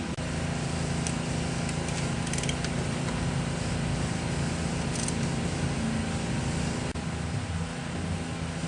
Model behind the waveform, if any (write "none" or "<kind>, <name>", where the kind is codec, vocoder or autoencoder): none